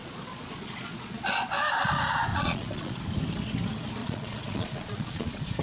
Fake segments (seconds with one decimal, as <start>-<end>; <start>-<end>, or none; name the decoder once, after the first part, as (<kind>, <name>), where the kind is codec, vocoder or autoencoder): 0.0-1.3 (vocoder, Vocos); 2.3-3.0; 4.0-5.6